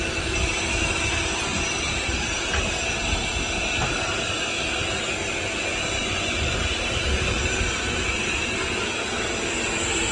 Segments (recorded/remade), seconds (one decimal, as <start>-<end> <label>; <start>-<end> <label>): 0.0-6.0 recorded; 6.0-6.6 remade; 6.6-10.1 recorded